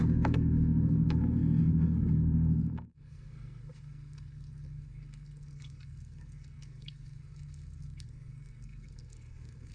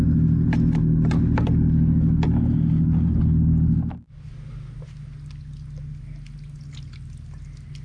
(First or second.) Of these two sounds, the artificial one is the first